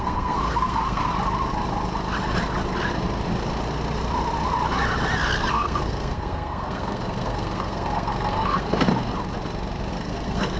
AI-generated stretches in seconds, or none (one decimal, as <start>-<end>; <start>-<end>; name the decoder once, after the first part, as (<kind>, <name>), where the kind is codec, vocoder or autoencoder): 0.0-1.1 (codec, SNAC); 5.5-8.9; 9.9-10.6